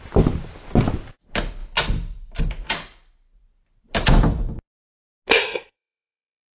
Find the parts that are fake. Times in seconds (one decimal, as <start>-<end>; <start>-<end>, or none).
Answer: 5.4-6.6